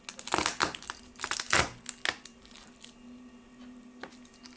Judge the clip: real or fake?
real